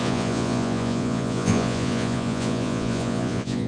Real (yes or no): no